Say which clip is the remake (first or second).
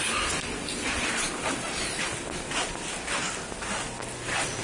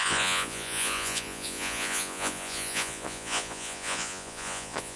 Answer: second